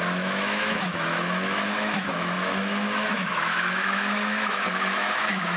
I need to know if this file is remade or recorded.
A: remade